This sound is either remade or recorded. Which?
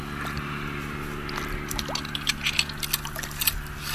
recorded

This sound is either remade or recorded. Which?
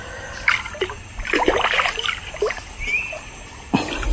recorded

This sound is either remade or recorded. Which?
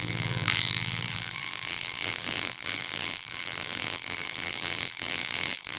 remade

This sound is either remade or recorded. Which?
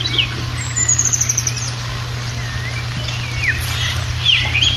remade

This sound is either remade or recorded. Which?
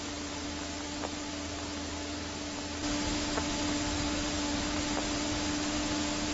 recorded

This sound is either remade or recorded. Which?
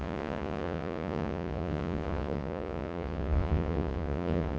remade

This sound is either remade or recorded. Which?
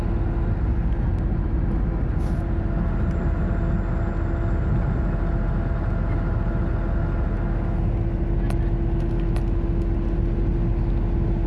recorded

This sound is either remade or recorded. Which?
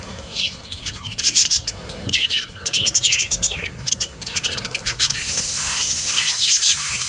remade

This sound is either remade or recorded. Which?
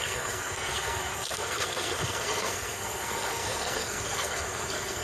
remade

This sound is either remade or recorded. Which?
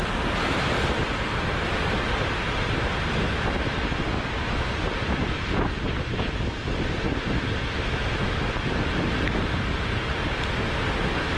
recorded